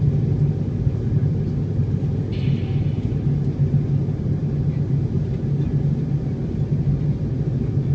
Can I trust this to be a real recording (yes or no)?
yes